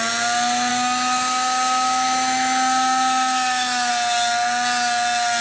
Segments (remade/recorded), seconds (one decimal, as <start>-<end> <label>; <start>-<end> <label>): 0.0-0.7 recorded; 0.7-3.9 remade; 3.9-5.4 recorded